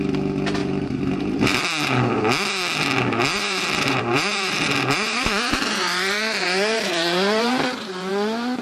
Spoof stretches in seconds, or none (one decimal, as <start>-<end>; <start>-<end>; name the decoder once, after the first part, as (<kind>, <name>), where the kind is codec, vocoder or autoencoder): 0.6-1.6 (vocoder, BigVGAN v2); 3.3-8.1